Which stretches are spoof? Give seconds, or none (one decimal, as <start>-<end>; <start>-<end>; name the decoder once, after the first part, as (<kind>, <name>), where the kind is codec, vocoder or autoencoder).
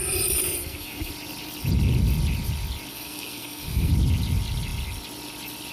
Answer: 0.4-1.1 (codec, SNAC); 2.9-3.9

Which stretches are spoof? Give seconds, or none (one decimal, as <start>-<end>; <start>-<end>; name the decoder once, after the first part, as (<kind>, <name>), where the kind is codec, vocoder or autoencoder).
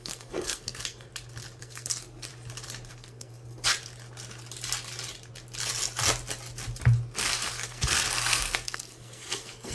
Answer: 0.0-1.1 (codec, SNAC); 1.6-2.3; 2.9-3.3; 7.2-9.7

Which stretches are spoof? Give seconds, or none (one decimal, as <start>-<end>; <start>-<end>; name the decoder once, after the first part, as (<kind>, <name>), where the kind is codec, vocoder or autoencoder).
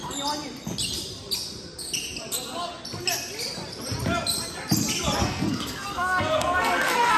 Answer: 5.2-7.2 (codec, SNAC)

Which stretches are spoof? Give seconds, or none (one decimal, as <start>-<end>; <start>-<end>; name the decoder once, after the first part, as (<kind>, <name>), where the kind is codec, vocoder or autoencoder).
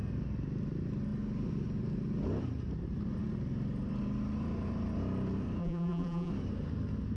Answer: 5.6-6.3 (vocoder, BigVGAN v2)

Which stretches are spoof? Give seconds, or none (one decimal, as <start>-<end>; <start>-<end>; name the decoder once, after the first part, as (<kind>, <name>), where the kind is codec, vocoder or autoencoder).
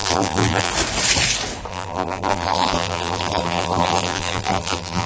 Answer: 0.0-0.7 (vocoder, BigVGAN v2); 1.7-5.1